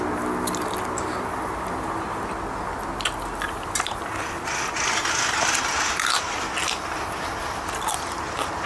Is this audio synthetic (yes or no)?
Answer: no